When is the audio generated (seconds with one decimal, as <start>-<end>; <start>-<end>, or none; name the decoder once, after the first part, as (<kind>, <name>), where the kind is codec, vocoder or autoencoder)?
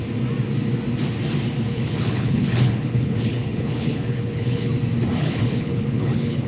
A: 1.7-4.7 (codec, HILCodec); 5.2-6.5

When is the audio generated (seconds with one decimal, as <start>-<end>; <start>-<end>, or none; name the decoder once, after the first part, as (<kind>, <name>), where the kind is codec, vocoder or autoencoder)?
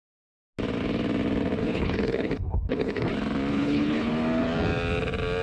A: 1.6-3.0 (codec, HILCodec); 3.5-4.1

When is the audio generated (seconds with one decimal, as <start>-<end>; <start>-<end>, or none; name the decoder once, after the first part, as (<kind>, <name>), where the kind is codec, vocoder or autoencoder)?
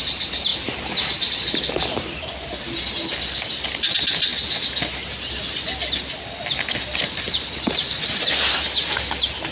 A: none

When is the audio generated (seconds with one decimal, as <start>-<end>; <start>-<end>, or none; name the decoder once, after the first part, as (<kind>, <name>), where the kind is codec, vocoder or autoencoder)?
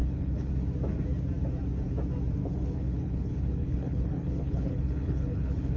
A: 0.0-0.5 (codec, HILCodec); 2.4-5.8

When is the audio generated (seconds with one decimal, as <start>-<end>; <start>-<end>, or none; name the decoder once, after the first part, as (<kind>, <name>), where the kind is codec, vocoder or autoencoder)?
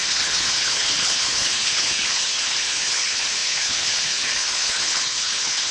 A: 0.0-5.7 (codec, HILCodec)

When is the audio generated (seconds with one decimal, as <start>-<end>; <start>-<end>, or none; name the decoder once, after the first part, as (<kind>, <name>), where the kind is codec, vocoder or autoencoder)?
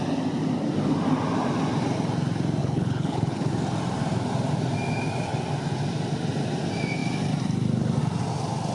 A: 2.6-3.5 (codec, HILCodec)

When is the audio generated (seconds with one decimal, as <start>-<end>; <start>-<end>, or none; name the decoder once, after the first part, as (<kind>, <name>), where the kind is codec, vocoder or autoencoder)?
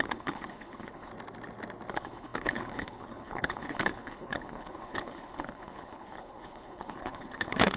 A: 0.0-1.1 (codec, HILCodec); 1.9-7.8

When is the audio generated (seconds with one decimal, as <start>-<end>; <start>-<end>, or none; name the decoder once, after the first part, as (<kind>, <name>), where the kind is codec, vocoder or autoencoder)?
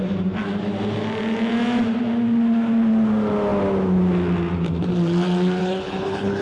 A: 5.6-6.4 (codec, HILCodec)